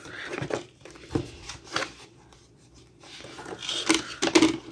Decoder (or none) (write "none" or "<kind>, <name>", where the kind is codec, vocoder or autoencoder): none